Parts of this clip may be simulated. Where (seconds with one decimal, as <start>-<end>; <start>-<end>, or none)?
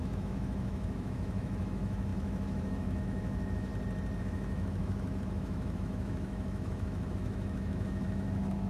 0.0-3.7; 4.2-8.7